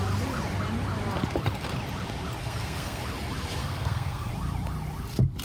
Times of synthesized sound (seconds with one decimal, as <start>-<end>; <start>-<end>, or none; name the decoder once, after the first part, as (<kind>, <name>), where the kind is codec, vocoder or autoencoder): 2.4-3.0 (codec, SNAC); 3.6-4.3